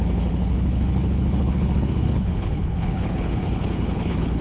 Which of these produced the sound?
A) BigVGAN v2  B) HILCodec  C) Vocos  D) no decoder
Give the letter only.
B